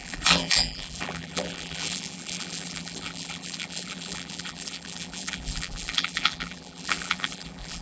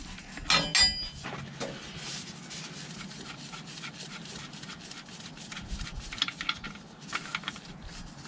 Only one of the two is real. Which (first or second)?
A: second